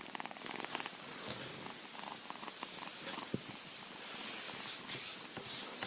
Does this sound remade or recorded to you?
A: recorded